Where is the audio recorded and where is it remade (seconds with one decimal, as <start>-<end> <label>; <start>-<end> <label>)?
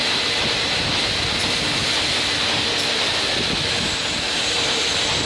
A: 0.0-5.3 recorded